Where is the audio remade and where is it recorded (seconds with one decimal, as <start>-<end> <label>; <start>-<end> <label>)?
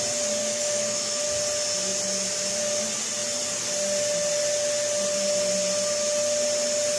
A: 0.0-0.4 recorded; 0.4-1.2 remade; 1.2-7.0 recorded